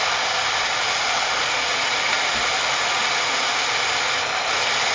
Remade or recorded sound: recorded